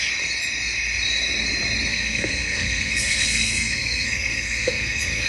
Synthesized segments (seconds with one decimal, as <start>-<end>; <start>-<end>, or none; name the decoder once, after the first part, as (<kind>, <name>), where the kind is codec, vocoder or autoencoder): 1.9-5.3 (codec, SNAC)